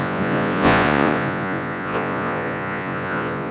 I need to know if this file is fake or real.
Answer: fake